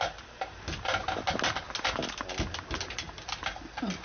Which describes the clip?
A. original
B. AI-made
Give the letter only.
A